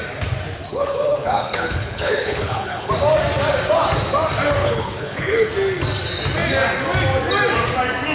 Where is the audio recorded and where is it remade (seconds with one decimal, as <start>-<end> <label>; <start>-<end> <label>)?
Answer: 0.0-0.7 recorded; 0.7-2.9 remade; 2.9-4.6 recorded; 4.6-5.5 remade; 5.5-8.1 recorded